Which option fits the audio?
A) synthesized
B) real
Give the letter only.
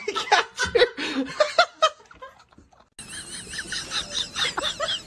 B